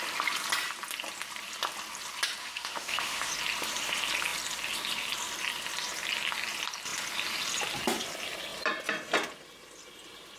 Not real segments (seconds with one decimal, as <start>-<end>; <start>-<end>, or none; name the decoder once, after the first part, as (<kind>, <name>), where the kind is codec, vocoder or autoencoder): 2.4-3.3 (autoencoder, DAC-VAE)